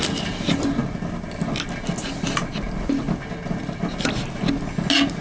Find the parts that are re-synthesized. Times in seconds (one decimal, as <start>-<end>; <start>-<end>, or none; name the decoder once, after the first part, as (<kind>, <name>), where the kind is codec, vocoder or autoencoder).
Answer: none